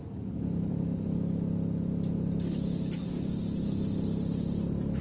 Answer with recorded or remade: recorded